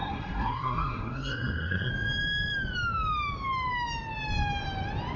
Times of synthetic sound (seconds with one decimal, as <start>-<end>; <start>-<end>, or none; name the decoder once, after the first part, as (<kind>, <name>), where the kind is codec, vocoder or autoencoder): 0.0-1.9 (codec, SNAC)